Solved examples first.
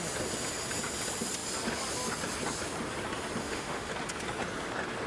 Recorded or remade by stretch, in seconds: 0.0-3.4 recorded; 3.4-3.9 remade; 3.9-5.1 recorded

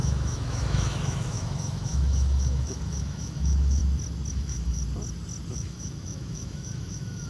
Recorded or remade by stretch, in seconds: 0.0-3.8 remade; 3.8-4.3 recorded; 4.3-4.8 remade; 4.8-5.5 recorded; 5.5-7.3 remade